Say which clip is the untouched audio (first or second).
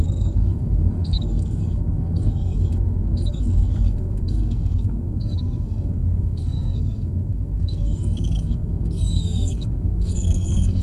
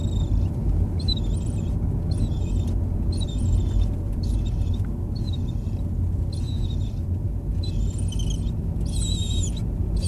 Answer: second